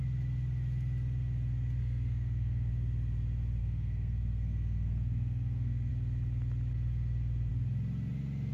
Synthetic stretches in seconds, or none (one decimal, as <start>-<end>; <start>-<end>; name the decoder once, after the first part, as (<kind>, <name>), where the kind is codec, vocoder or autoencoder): 1.8-2.7 (codec, SNAC); 3.6-5.9